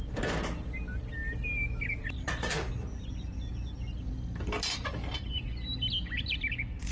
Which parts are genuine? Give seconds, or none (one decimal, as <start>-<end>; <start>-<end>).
0.0-6.9